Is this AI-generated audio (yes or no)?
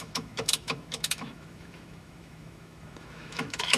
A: yes